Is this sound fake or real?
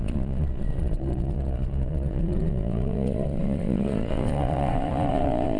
fake